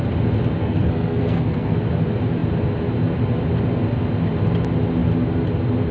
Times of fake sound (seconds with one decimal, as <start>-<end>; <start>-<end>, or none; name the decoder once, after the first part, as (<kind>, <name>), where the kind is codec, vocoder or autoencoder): 0.6-1.8 (codec, SNAC)